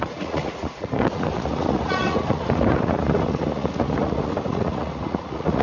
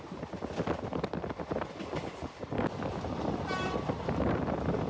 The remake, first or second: first